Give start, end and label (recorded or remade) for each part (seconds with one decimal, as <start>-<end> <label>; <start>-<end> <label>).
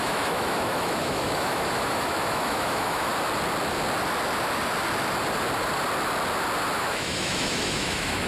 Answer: 0.0-3.1 remade; 3.1-6.8 recorded; 6.8-8.3 remade